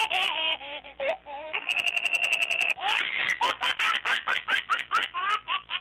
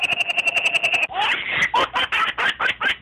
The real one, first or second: second